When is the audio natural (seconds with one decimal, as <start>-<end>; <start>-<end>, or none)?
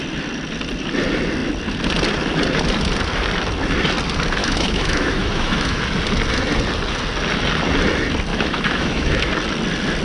0.0-4.4; 5.8-8.3; 9.3-10.0